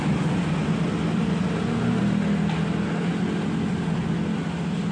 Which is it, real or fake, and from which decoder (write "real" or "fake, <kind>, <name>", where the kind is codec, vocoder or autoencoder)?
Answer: real